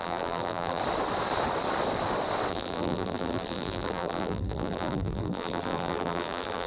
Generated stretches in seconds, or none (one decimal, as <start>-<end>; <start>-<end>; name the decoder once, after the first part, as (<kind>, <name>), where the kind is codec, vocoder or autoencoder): 0.0-0.8 (vocoder, BigVGAN v2); 2.5-6.7